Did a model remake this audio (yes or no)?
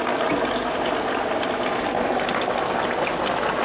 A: no